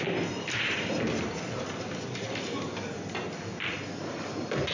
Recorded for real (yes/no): yes